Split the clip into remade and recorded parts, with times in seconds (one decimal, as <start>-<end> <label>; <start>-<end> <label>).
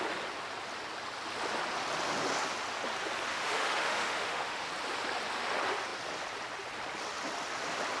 0.0-3.3 recorded; 3.3-4.7 remade; 4.7-8.0 recorded